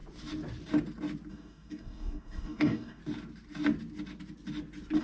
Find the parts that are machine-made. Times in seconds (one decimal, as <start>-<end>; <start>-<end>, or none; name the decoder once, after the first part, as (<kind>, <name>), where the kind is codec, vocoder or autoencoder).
1.3-3.0 (codec, DAC)